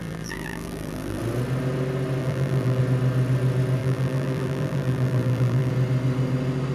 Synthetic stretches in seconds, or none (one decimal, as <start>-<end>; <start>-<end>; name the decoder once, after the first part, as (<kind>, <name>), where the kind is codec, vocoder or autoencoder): 0.0-1.2 (vocoder, BigVGAN v2); 2.2-2.8; 3.8-5.7